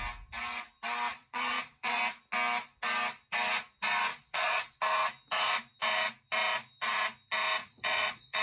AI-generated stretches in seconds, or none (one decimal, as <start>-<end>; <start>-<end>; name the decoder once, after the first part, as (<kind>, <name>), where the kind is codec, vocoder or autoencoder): 1.1-2.0 (vocoder, Vocos); 4.1-4.8; 7.6-8.4